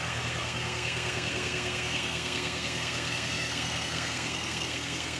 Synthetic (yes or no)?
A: yes